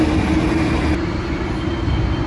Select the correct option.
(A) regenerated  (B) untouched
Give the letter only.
B